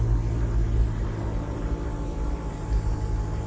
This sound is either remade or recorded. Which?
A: recorded